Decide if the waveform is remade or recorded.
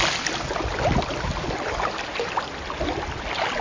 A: recorded